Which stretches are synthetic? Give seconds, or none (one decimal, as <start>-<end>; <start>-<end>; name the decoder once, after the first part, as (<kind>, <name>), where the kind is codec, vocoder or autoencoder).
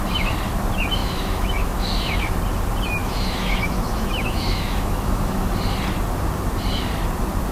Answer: 1.0-2.2 (autoencoder, DAC-VAE); 3.0-5.5